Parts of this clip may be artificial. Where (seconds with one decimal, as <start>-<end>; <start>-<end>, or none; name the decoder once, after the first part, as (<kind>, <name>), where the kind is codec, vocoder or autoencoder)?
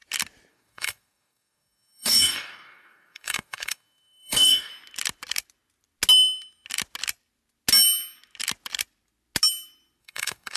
0.5-4.7 (codec, DAC); 10.0-10.6